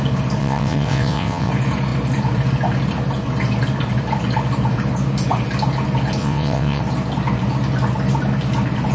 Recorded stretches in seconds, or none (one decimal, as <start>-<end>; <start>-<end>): 0.0-0.4; 1.5-6.2; 6.8-8.9

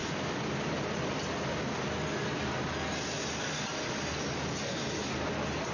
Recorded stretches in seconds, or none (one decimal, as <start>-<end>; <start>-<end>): 0.0-5.7

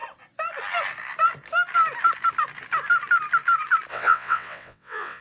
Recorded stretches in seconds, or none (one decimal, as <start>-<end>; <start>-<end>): 0.0-3.9

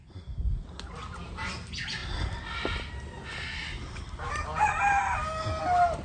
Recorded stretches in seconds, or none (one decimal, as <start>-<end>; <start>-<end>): 0.0-6.0

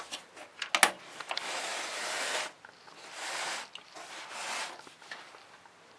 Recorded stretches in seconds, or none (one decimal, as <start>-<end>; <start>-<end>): 0.0-6.0

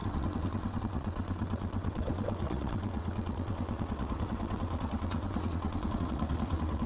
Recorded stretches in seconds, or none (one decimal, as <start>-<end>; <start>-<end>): none

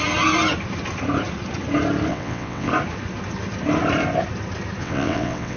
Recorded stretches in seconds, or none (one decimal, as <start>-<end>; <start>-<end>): 0.0-2.1; 2.7-4.8

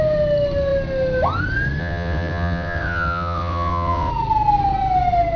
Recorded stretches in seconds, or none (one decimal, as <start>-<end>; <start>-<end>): 0.0-1.8; 4.1-5.4